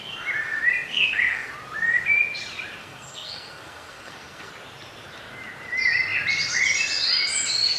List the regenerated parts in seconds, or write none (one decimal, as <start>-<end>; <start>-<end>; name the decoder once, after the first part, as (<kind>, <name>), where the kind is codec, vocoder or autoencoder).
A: 0.9-1.5 (codec, SNAC); 2.8-4.5